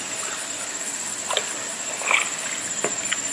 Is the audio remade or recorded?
recorded